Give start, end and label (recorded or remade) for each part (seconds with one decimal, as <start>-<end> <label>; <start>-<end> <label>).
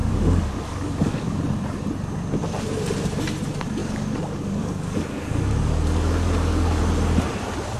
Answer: 0.0-1.4 remade; 1.4-3.8 recorded; 3.8-6.8 remade; 6.8-7.8 recorded